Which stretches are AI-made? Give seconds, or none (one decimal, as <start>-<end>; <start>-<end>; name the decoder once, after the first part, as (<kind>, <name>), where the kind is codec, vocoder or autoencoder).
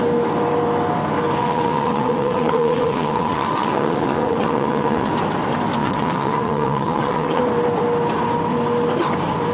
1.4-5.1 (vocoder, WaveNeXt); 5.8-7.4